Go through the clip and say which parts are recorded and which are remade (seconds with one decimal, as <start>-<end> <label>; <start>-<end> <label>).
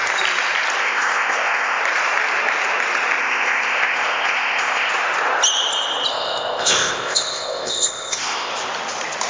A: 0.0-0.8 recorded; 0.8-1.8 remade; 1.8-3.2 recorded; 3.2-4.9 remade; 4.9-6.1 recorded; 6.1-8.5 remade; 8.5-9.3 recorded